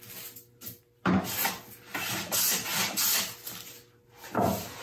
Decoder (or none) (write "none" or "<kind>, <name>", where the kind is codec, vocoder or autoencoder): none